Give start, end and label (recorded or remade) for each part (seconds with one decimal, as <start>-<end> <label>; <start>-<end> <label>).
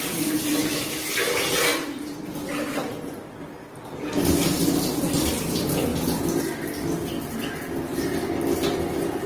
0.0-9.3 recorded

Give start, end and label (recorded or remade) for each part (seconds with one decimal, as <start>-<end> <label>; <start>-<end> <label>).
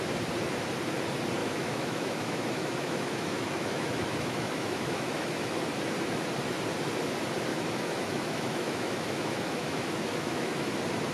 0.0-1.4 recorded; 1.4-5.5 remade; 5.5-7.5 recorded; 7.5-10.7 remade; 10.7-11.1 recorded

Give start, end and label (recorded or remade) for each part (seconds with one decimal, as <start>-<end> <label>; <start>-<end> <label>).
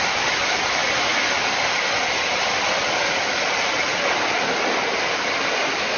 0.0-6.0 recorded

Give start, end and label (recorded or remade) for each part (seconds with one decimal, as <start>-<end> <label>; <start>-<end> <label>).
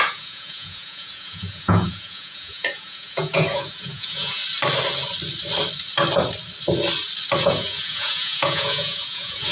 0.0-4.4 remade; 4.4-7.4 recorded; 7.4-9.5 remade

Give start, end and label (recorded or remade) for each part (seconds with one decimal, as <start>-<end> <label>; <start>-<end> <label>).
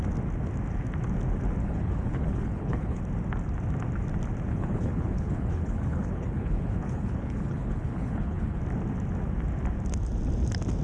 0.0-1.6 recorded; 1.6-3.0 remade; 3.0-4.5 recorded; 4.5-8.6 remade; 8.6-10.8 recorded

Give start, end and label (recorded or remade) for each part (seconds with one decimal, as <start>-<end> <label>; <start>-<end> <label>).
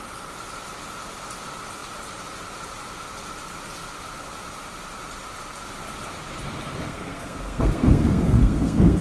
0.0-6.8 recorded; 6.8-9.0 remade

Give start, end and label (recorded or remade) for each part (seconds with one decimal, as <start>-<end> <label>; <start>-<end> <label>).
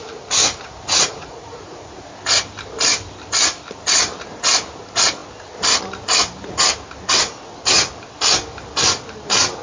0.0-0.4 recorded; 0.4-2.1 remade; 2.1-9.6 recorded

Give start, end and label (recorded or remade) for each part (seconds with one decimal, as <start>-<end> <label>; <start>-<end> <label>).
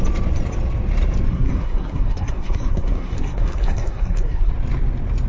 0.0-1.3 recorded; 1.3-4.5 remade; 4.5-5.3 recorded